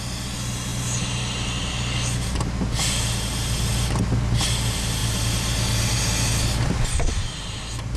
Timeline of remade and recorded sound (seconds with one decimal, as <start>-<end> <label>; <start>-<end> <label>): 0.0-8.0 recorded